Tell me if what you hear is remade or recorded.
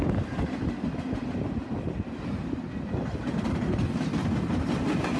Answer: recorded